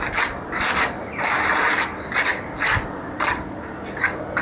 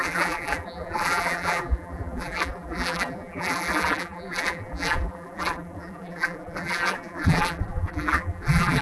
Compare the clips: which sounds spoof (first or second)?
second